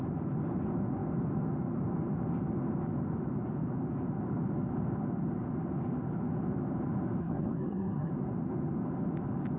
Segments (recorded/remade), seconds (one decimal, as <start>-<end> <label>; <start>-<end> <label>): 0.0-7.2 recorded; 7.2-8.1 remade; 8.1-9.6 recorded